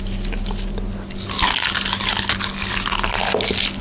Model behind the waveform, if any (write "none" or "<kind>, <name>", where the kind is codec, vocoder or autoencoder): none